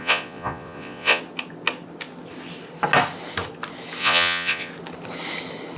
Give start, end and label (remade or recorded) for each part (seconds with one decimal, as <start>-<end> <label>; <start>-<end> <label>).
0.0-1.2 remade; 1.2-4.0 recorded; 4.0-4.7 remade; 4.7-5.8 recorded